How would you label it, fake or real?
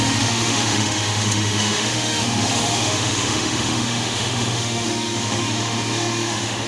fake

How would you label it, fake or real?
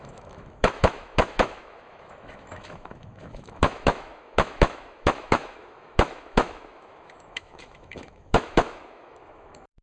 fake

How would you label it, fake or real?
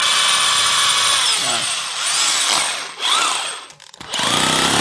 real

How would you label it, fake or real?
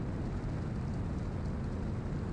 real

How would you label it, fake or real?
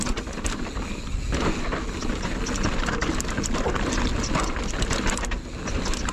real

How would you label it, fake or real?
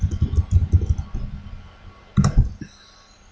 real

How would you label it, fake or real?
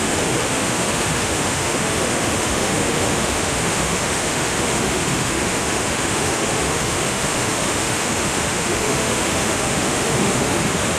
fake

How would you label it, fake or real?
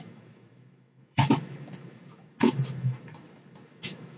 fake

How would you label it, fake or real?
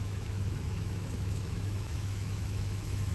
fake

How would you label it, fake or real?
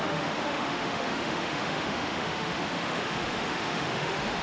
fake